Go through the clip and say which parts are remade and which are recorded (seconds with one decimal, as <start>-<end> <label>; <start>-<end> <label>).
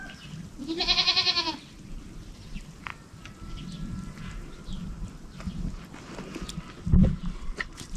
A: 0.0-8.0 remade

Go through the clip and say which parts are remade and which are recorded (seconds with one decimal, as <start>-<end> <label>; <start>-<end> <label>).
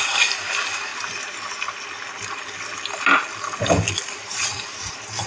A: 0.0-0.9 remade; 0.9-3.6 recorded; 3.6-5.3 remade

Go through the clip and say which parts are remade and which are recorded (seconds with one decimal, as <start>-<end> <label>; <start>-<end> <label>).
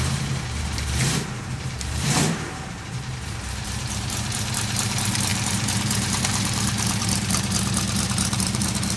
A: 0.0-9.0 remade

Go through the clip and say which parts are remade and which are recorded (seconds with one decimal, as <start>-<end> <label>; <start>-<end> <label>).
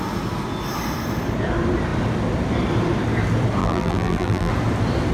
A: 0.0-3.6 recorded; 3.6-4.5 remade; 4.5-5.1 recorded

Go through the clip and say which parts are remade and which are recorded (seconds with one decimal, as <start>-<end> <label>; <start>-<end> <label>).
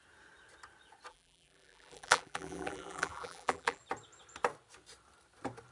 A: 0.0-1.1 recorded; 1.1-3.8 remade; 3.8-5.7 recorded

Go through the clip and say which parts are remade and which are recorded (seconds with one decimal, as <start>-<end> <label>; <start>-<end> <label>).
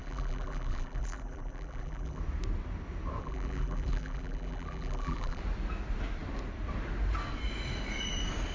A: 0.0-2.2 remade; 2.2-3.2 recorded; 3.2-5.4 remade; 5.4-8.5 recorded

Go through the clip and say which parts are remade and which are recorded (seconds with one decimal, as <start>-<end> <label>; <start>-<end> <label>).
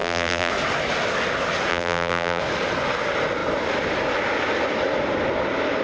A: 0.0-0.5 remade; 0.5-1.7 recorded; 1.7-2.4 remade; 2.4-5.8 recorded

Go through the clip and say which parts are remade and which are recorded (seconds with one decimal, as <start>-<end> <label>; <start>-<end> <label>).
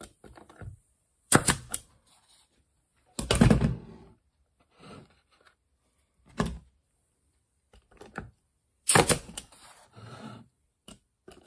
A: 0.0-0.5 recorded; 0.5-2.2 remade; 2.2-6.8 recorded; 6.8-11.5 remade